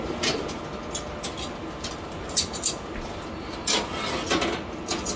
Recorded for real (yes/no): yes